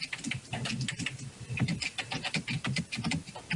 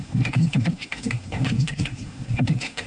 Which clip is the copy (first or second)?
second